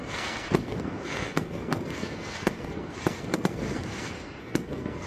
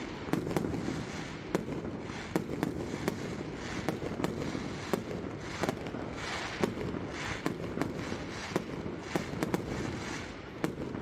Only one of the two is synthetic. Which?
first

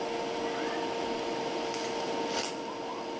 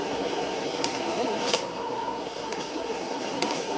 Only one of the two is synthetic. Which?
second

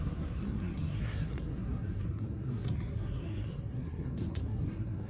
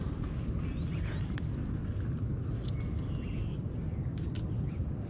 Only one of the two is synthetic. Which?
first